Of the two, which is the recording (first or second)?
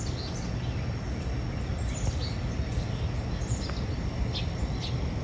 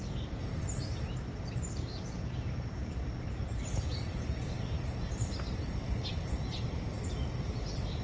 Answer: first